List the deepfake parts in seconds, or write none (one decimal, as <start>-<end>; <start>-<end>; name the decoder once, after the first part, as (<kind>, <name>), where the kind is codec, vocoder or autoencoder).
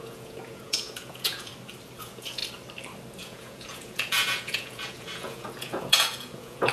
0.0-1.5 (vocoder, Vocos); 2.0-2.4; 3.2-6.7